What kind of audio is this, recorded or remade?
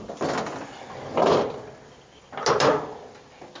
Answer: recorded